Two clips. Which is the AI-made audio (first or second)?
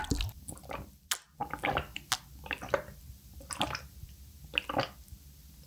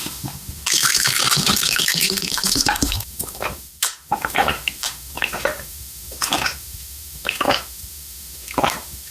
second